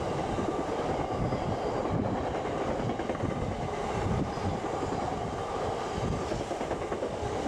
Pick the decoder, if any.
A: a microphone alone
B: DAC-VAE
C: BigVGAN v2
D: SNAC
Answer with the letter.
A